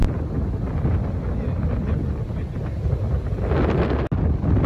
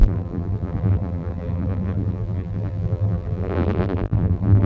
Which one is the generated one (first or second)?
second